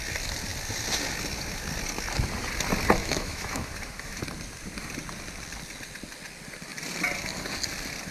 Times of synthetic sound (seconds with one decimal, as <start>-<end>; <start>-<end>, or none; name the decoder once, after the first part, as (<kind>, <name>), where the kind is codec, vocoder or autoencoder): 3.0-4.2 (autoencoder, DAC-VAE)